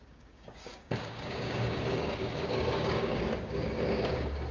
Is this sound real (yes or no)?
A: no